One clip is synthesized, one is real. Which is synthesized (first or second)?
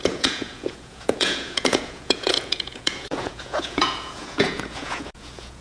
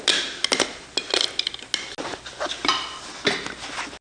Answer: first